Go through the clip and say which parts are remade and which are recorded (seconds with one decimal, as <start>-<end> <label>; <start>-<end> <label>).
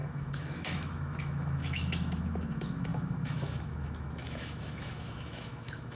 0.0-6.0 remade